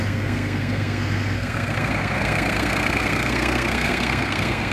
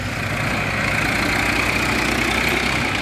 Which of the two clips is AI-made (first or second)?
first